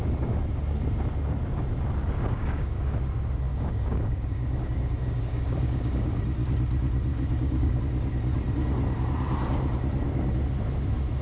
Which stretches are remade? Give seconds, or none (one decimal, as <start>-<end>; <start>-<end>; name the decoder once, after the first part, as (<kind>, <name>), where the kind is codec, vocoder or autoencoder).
2.0-2.9 (codec, DAC); 3.5-6.2; 7.1-7.8